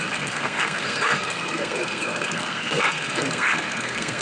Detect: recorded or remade remade